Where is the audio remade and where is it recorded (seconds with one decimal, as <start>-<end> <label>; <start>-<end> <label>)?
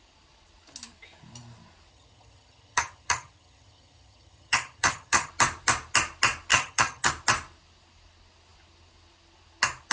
0.0-1.9 recorded; 1.9-5.3 remade; 5.3-6.5 recorded; 6.5-7.1 remade; 7.1-9.9 recorded